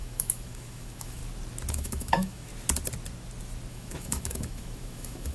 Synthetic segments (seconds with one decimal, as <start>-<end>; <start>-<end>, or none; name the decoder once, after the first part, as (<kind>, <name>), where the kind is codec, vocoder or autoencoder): 0.0-1.2 (autoencoder, DAC-VAE); 1.7-2.5; 3.7-5.3

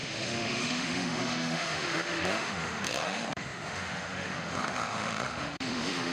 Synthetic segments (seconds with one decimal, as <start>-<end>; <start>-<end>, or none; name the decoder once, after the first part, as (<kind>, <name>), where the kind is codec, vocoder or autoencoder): 0.0-6.1 (autoencoder, DAC-VAE)

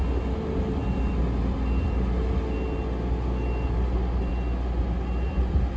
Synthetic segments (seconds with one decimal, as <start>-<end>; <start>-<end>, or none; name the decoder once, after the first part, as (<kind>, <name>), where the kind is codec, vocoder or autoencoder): none

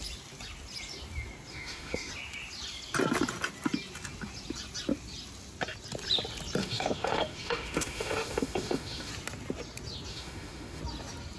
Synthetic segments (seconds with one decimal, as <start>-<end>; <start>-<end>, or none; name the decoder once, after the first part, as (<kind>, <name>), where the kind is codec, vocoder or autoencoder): 1.5-2.1 (autoencoder, DAC-VAE); 6.6-9.1; 10.1-10.8